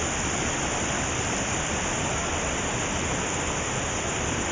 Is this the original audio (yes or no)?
no